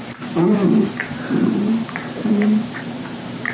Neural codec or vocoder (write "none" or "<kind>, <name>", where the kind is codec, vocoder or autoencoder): vocoder, BigVGAN v2